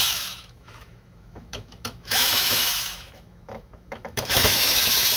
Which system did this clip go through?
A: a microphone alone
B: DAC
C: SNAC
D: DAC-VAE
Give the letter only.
D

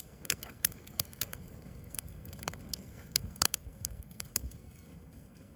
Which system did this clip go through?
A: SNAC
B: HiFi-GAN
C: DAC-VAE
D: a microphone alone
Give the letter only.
A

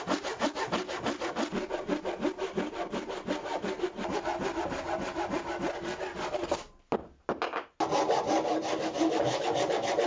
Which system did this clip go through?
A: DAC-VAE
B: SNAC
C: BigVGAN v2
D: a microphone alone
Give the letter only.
D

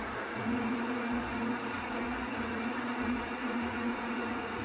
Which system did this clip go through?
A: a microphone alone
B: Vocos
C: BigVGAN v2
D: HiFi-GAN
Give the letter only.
B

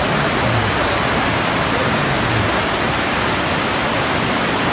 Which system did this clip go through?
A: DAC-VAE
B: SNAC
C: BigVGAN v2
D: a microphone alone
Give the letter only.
D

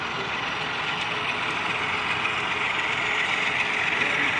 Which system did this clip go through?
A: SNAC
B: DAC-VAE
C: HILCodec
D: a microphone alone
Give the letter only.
D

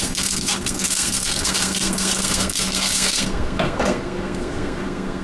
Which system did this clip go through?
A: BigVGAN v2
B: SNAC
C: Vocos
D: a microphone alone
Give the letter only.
B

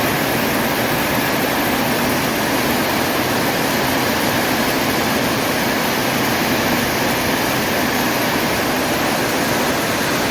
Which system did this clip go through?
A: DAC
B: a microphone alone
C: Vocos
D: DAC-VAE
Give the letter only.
B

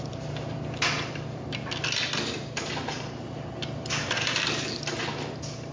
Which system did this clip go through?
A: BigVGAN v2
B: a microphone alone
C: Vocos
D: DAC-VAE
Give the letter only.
B